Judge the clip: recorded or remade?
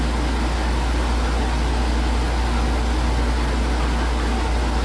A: recorded